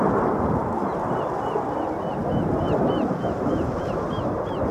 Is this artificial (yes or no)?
no